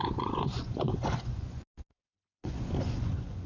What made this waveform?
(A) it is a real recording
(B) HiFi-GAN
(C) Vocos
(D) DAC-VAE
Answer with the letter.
C